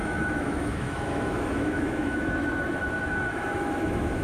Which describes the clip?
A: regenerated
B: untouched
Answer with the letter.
A